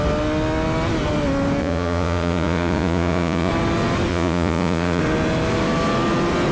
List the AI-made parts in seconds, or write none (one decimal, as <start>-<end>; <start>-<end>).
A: 1.6-3.5; 4.1-5.0